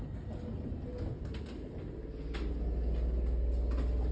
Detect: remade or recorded recorded